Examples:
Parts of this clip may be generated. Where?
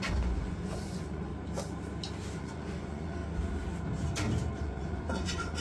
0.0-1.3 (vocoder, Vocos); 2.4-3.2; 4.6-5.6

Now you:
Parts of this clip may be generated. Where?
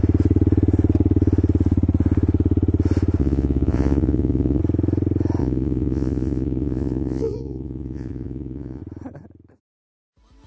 3.2-4.6 (vocoder, Vocos); 5.4-8.8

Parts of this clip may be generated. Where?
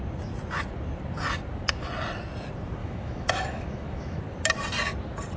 2.8-4.2 (autoencoder, DAC-VAE)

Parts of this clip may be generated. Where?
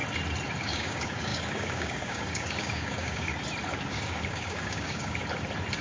0.6-3.3 (codec, DAC); 3.9-5.2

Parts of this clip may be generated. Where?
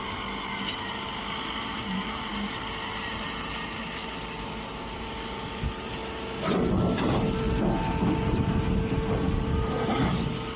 none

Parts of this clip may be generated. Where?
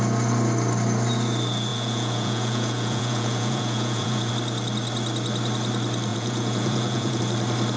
1.7-4.3 (vocoder, Vocos); 6.1-7.2